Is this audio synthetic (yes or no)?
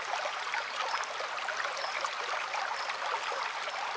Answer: no